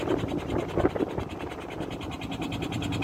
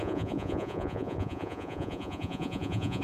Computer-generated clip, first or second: second